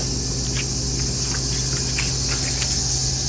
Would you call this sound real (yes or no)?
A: yes